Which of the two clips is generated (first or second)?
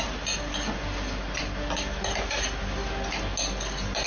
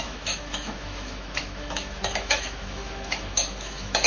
second